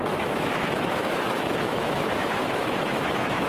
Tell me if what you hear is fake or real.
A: fake